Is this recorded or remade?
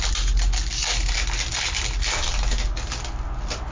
recorded